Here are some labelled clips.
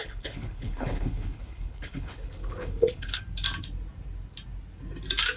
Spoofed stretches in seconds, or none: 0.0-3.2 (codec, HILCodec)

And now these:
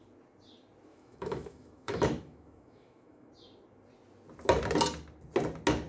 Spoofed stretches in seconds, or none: 0.9-3.3 (autoencoder, DAC-VAE)

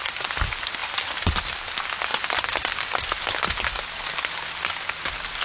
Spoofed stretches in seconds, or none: none

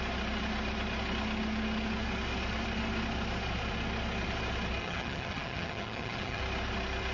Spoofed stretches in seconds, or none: 4.8-6.4 (vocoder, HiFi-GAN)

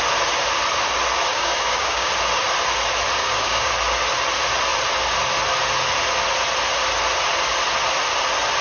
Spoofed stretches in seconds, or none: 1.3-2.1 (codec, DAC); 3.2-3.7

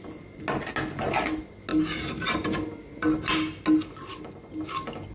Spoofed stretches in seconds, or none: none

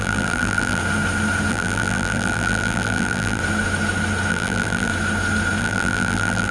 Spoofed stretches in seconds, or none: 0.0-0.8 (vocoder, BigVGAN v2); 1.5-3.4; 4.3-4.9; 5.6-6.5

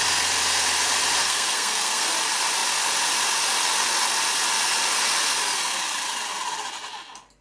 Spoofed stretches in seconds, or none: 1.2-2.1 (codec, SNAC)